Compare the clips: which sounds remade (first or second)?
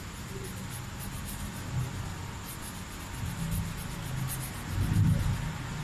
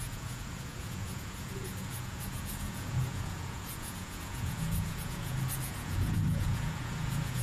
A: second